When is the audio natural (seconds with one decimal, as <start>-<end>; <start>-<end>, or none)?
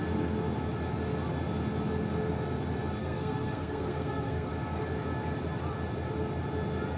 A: 0.0-3.0; 4.5-7.0